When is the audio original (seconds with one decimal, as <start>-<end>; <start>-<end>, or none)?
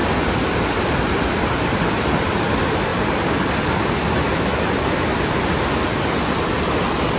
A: 2.4-7.2